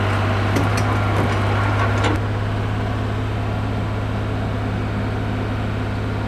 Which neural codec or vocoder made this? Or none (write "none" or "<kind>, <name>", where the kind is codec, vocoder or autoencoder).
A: none